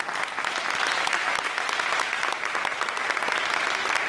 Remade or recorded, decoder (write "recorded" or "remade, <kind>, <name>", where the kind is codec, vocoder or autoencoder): recorded